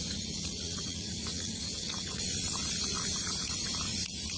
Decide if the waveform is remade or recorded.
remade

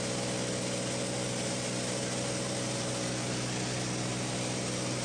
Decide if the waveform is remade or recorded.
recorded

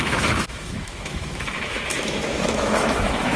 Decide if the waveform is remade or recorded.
remade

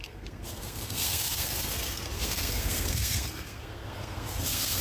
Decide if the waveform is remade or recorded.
remade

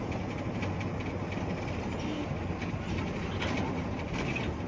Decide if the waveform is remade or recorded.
recorded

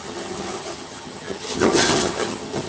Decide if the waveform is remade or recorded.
remade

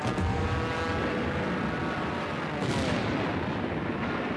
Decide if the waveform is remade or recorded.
recorded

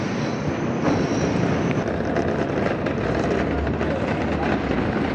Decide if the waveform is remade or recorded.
recorded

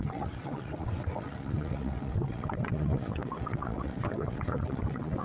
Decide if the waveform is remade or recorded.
remade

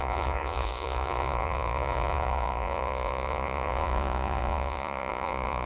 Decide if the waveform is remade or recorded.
remade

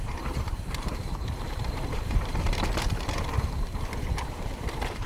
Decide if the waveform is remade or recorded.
remade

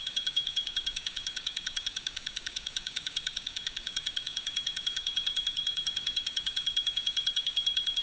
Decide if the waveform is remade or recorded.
remade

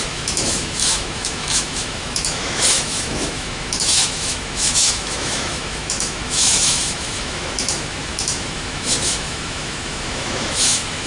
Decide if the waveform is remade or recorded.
remade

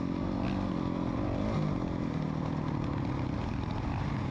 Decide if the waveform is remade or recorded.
recorded